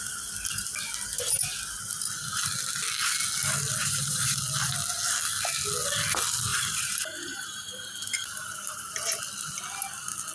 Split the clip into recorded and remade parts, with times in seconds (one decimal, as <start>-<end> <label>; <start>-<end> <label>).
0.0-3.8 recorded; 3.8-4.4 remade; 4.4-6.5 recorded; 6.5-8.9 remade; 8.9-10.3 recorded